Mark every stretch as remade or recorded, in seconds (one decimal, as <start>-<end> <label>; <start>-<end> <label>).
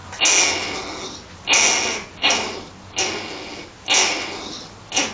0.0-5.1 recorded